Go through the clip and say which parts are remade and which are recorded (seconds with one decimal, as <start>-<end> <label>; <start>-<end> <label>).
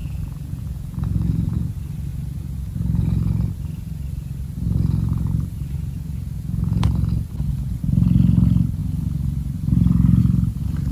0.0-1.7 remade; 1.7-10.9 recorded